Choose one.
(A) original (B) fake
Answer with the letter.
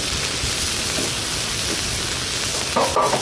A